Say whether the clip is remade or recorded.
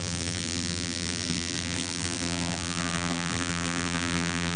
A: remade